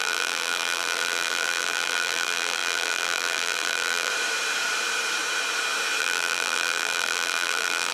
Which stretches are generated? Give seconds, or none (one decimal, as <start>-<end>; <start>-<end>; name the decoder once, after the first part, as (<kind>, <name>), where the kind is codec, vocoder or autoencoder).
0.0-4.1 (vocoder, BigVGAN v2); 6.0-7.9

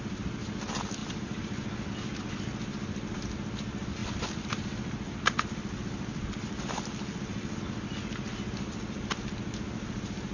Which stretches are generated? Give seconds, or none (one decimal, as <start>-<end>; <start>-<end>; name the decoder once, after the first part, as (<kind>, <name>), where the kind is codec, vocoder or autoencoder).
1.0-1.9 (vocoder, BigVGAN v2); 4.0-7.6

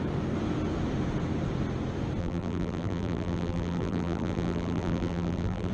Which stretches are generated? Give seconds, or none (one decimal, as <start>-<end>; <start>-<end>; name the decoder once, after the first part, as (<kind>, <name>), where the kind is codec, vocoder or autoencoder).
2.2-5.7 (vocoder, BigVGAN v2)